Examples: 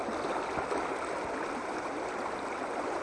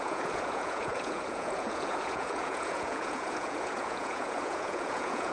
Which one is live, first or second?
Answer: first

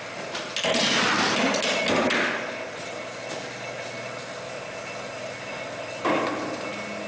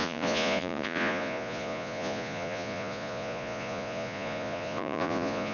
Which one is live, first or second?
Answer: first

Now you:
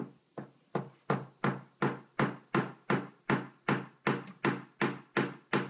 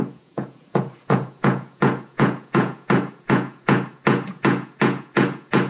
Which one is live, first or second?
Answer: first